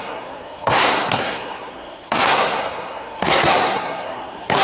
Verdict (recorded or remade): remade